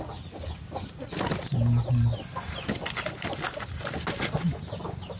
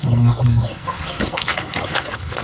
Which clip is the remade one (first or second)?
second